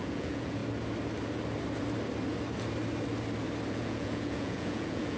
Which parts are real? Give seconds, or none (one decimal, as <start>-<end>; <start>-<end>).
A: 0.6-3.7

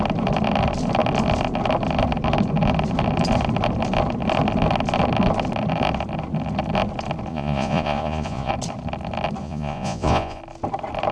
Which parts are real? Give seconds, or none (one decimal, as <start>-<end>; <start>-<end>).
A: 0.0-7.3; 8.5-9.4; 10.4-11.1

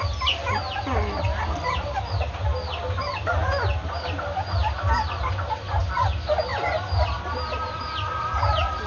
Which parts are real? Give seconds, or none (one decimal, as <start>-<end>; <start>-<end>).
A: 0.0-8.9

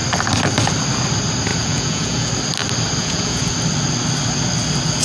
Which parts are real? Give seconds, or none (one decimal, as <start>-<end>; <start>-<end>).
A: 0.0-1.5; 2.3-3.0; 3.5-5.0